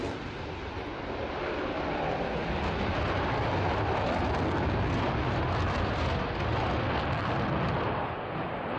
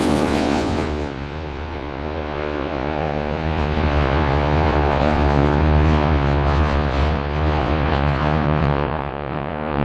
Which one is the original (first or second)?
first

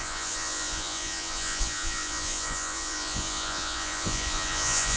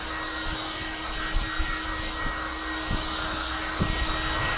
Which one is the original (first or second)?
second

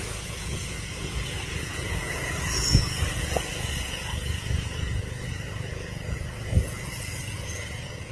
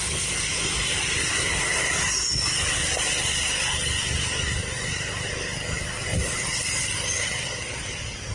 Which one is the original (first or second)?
second